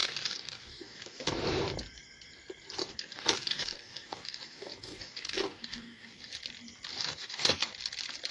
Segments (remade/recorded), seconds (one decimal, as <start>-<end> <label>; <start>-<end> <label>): 0.0-1.3 remade; 1.3-2.8 recorded; 2.8-6.3 remade; 6.3-6.9 recorded; 6.9-7.7 remade; 7.7-8.3 recorded